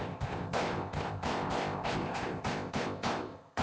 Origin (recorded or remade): remade